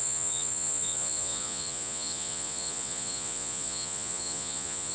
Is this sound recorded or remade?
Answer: remade